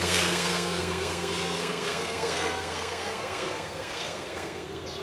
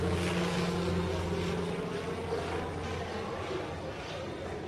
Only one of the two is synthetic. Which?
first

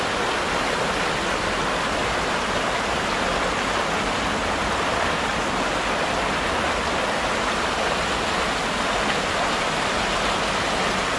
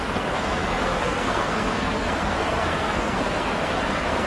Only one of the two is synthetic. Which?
second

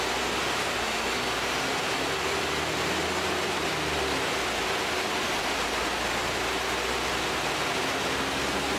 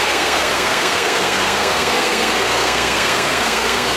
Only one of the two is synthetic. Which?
second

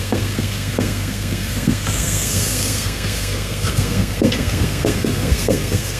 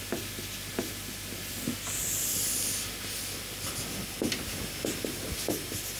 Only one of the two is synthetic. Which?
first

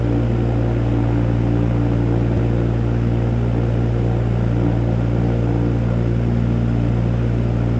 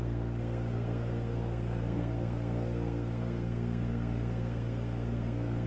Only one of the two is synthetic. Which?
second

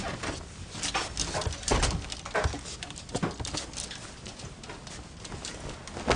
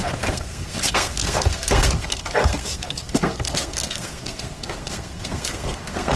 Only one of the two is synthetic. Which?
second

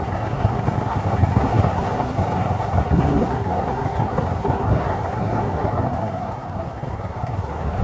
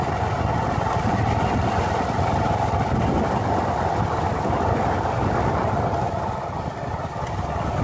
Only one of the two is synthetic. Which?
first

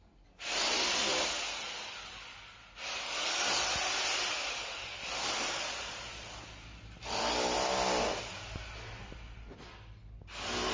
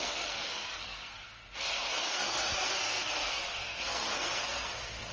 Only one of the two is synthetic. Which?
second